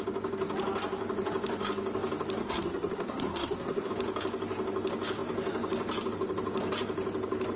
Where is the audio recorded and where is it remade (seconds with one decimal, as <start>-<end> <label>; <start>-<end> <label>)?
0.0-2.4 recorded; 2.4-3.9 remade; 3.9-7.6 recorded